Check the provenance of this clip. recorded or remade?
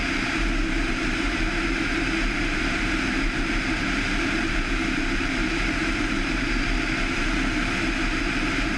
remade